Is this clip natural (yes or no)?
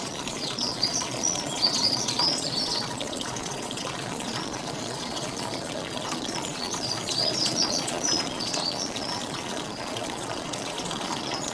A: no